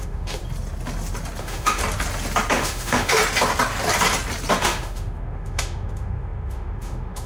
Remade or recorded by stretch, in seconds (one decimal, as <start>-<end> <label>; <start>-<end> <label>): 0.0-0.4 remade; 0.4-1.4 recorded; 1.4-1.8 remade; 1.8-2.5 recorded; 2.5-3.2 remade; 3.2-4.6 recorded; 4.6-7.3 remade